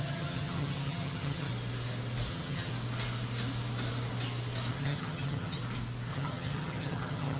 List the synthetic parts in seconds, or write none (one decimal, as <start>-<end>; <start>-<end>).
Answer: 0.0-1.5; 2.3-2.7; 4.7-5.6; 6.1-7.4

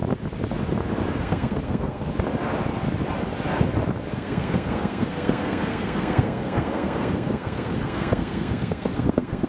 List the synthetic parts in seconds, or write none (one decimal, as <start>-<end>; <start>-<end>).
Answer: 1.2-2.1; 4.1-9.5

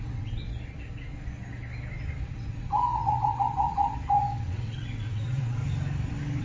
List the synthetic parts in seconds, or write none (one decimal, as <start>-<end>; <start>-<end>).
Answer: 0.0-0.5; 2.2-5.6

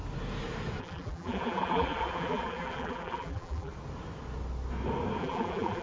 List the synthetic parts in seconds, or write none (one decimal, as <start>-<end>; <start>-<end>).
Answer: 0.8-3.7; 5.2-5.8

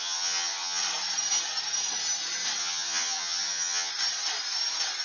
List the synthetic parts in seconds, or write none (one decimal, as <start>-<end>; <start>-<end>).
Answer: 0.0-0.8; 2.6-3.9